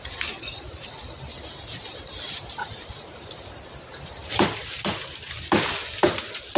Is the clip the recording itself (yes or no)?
no